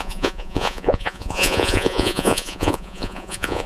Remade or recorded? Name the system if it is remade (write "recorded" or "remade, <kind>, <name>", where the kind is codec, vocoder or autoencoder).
remade, vocoder, Vocos